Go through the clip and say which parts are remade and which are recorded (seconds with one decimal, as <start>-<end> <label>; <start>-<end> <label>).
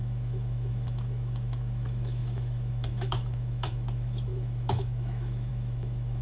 0.0-6.2 remade